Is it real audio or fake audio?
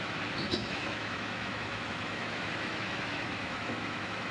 fake